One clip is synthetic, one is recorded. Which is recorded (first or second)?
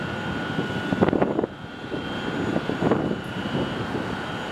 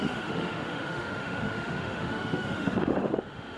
first